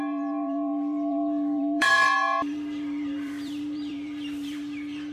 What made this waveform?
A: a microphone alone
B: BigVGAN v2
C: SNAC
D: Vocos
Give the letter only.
B